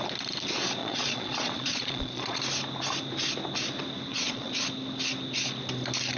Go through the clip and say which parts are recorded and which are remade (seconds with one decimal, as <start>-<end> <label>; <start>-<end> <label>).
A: 0.0-0.8 recorded; 0.8-2.4 remade; 2.4-4.1 recorded; 4.1-4.6 remade; 4.6-6.2 recorded